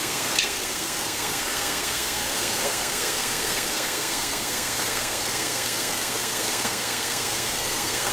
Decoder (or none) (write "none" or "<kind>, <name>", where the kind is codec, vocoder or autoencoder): codec, SNAC